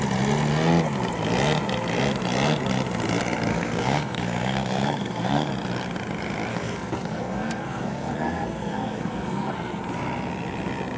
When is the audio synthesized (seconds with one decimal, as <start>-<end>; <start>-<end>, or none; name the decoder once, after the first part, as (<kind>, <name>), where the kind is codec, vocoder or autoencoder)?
3.5-5.5 (codec, SNAC); 6.5-9.8